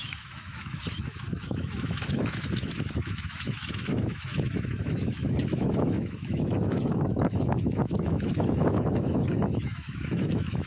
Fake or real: fake